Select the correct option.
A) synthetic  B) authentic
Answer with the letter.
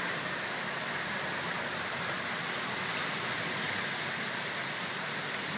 B